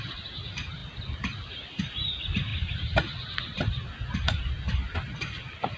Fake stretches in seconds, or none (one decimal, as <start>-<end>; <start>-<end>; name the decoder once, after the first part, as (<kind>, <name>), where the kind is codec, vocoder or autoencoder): none